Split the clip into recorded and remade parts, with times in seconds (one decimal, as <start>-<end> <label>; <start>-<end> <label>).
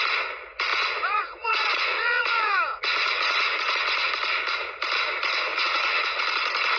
0.0-0.7 recorded; 0.7-4.1 remade; 4.1-5.5 recorded; 5.5-6.2 remade; 6.2-6.8 recorded